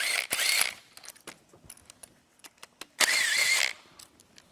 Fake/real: real